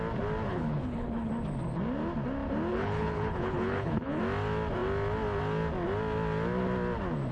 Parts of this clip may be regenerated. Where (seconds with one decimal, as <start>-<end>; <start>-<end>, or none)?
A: 0.5-1.3; 2.7-4.2